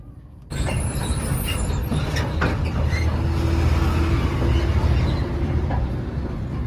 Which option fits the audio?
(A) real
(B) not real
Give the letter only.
A